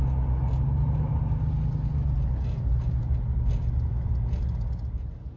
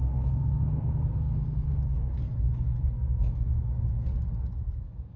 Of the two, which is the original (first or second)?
first